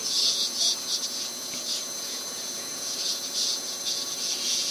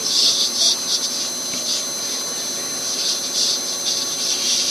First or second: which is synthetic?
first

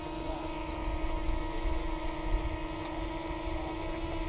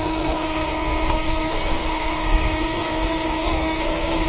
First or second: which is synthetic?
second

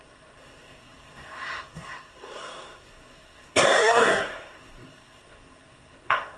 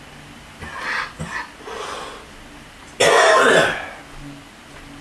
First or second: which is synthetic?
first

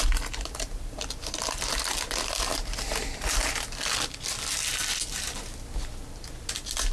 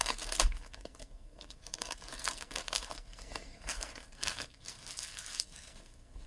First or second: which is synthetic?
second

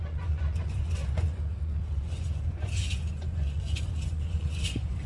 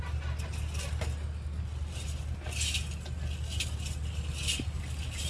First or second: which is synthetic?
first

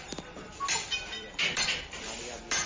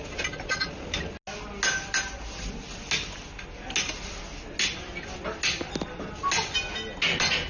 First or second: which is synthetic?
first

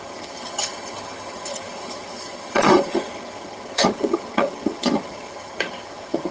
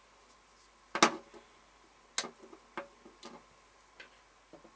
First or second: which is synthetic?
first